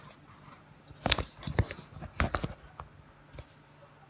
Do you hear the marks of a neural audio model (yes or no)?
no